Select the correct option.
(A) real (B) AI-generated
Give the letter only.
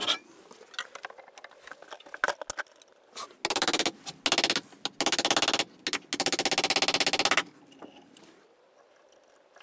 A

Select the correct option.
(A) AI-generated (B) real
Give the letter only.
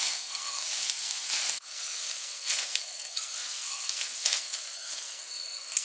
A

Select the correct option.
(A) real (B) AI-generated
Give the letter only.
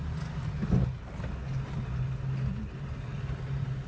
A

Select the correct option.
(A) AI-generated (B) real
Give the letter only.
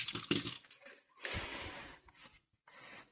B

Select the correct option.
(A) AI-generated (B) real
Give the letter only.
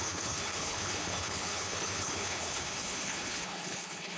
A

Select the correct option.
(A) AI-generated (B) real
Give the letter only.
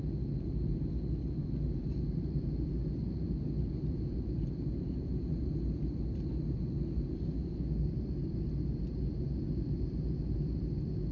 B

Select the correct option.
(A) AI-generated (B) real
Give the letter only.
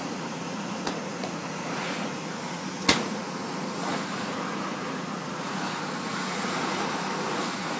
A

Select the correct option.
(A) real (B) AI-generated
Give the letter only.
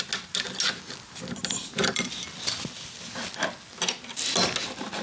A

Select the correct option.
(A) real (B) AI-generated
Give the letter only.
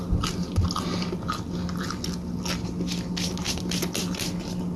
A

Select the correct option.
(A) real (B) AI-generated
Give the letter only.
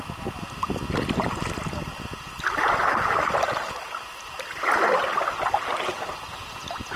A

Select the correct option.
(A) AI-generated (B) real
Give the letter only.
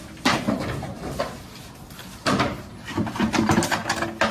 B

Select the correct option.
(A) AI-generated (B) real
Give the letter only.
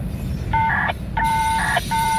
A